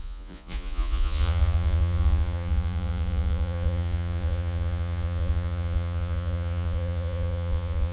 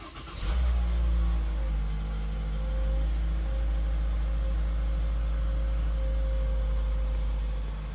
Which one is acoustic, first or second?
second